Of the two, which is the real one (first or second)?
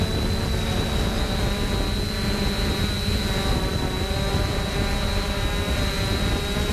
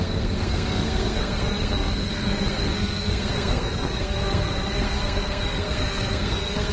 first